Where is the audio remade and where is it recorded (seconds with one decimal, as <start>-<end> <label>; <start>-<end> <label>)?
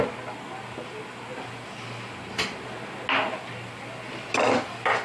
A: 0.0-5.0 recorded